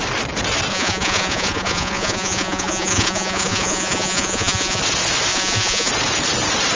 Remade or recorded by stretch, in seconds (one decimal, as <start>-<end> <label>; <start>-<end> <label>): 0.0-0.7 recorded; 0.7-4.8 remade; 4.8-5.3 recorded; 5.3-5.9 remade; 5.9-6.8 recorded

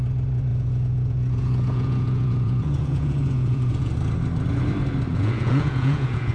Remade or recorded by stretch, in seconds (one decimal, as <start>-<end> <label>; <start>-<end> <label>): 0.0-0.5 recorded; 0.5-3.9 remade; 3.9-5.1 recorded; 5.1-6.3 remade